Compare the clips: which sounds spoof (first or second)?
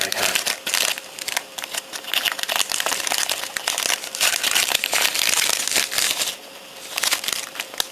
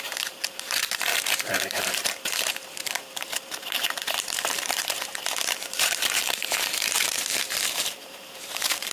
second